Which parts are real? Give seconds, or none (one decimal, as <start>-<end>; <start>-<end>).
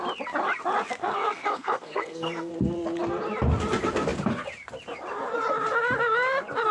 0.0-1.0; 2.5-6.7